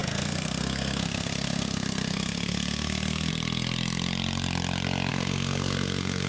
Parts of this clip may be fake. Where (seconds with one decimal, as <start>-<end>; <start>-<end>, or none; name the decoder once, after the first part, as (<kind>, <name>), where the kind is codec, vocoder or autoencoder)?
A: 0.0-3.3 (codec, SNAC); 5.1-6.3